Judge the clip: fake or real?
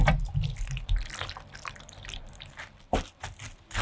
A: fake